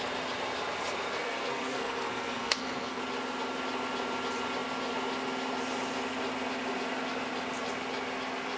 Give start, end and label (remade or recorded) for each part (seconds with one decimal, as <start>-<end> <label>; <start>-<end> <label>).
0.0-1.2 recorded; 1.2-3.0 remade; 3.0-8.6 recorded